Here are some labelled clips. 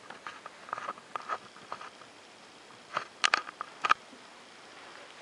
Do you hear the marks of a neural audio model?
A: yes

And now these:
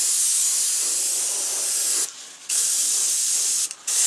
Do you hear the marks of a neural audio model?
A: no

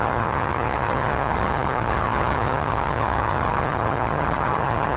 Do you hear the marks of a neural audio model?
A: yes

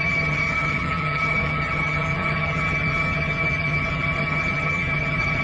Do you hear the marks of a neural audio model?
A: yes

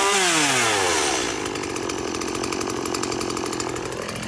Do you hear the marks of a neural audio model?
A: no